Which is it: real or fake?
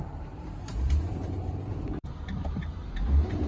fake